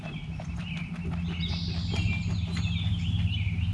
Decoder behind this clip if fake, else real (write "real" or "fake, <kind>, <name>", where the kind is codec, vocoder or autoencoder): real